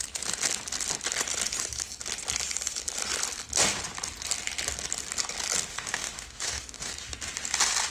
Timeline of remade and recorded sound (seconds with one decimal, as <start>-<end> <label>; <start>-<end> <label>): 0.0-5.7 recorded; 5.7-6.9 remade; 6.9-7.9 recorded